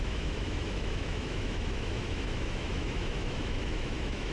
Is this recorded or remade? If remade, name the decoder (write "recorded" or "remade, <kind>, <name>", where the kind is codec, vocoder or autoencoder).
remade, autoencoder, DAC-VAE